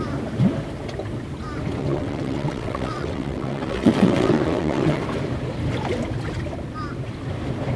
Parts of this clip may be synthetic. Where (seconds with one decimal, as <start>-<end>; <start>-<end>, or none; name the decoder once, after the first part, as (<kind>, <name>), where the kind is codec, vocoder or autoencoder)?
1.8-5.0 (vocoder, WaveNeXt)